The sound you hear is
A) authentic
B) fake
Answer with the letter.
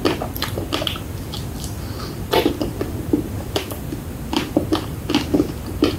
B